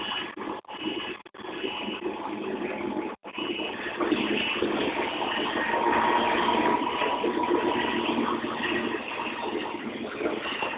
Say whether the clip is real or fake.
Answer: real